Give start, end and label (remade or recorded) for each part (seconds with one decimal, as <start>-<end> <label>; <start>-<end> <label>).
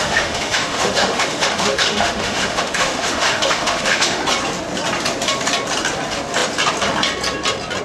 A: 0.0-4.2 remade; 4.2-7.8 recorded